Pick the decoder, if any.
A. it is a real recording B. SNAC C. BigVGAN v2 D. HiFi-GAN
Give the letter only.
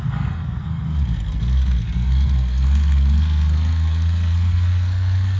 B